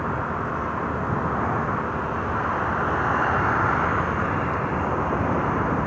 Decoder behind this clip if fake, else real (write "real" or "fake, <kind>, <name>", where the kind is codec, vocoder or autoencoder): real